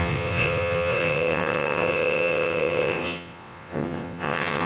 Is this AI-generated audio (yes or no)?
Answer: yes